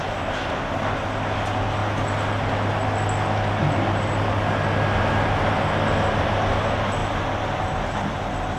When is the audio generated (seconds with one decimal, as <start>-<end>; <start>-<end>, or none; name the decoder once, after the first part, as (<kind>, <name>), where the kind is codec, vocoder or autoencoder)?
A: none